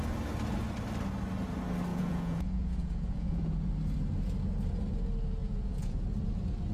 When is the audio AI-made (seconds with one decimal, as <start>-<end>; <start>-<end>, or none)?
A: 1.9-3.7; 5.4-6.0